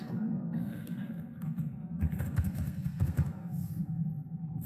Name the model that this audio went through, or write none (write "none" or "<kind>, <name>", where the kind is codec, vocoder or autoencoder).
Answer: codec, SNAC